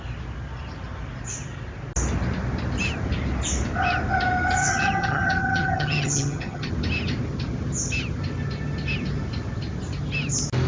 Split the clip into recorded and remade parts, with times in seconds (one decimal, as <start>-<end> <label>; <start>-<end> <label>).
0.0-4.6 recorded; 4.6-6.7 remade; 6.7-10.7 recorded